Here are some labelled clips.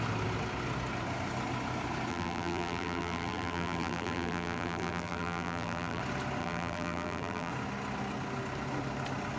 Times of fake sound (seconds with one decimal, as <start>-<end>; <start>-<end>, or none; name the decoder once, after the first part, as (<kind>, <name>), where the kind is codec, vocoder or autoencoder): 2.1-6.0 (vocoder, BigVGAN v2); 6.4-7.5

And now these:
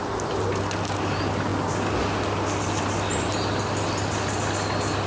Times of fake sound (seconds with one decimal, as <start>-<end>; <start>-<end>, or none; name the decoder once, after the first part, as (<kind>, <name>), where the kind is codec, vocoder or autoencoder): none

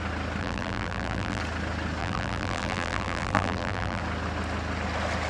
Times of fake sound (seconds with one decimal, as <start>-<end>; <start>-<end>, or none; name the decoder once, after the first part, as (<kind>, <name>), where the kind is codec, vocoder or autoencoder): 0.4-1.4 (vocoder, BigVGAN v2); 2.0-4.0

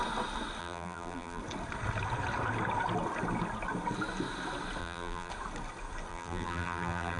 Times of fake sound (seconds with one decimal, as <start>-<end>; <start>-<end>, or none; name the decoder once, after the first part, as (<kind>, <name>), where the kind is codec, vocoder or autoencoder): 0.6-1.4 (vocoder, BigVGAN v2); 4.8-5.3; 6.1-7.2

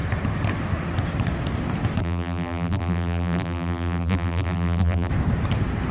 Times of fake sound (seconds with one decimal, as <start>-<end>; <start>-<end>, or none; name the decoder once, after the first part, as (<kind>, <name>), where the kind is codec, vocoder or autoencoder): 2.0-5.1 (vocoder, BigVGAN v2)

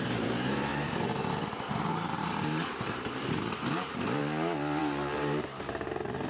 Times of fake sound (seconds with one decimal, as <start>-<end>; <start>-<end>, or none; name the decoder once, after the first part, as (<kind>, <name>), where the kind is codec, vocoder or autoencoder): 0.0-0.7 (vocoder, BigVGAN v2); 1.7-4.2; 4.8-6.3

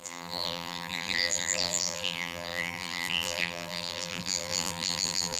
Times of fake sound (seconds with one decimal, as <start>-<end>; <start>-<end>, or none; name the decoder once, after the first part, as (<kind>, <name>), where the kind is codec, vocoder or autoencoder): 0.0-5.4 (vocoder, BigVGAN v2)

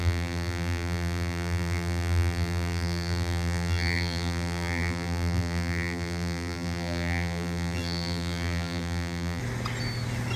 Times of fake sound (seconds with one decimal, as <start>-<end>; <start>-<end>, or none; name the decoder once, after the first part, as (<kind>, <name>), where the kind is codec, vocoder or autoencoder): 0.0-9.4 (vocoder, BigVGAN v2)